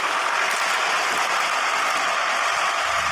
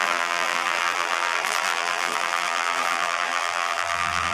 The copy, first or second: second